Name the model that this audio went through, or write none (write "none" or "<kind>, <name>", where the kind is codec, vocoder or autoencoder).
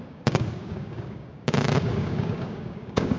codec, DAC